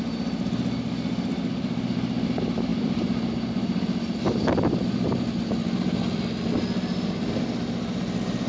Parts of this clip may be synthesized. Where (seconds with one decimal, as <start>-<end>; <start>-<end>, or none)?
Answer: none